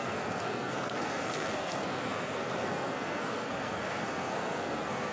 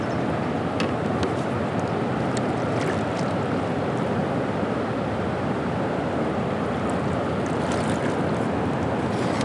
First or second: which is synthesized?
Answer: first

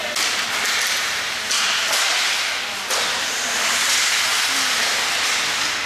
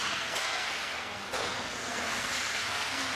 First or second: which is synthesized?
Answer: second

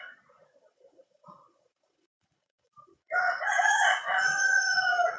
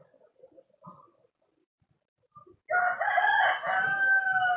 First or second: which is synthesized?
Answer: first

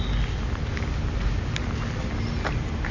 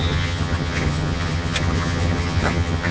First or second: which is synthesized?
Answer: second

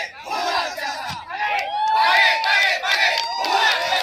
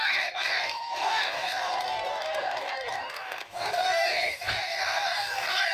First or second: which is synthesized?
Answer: second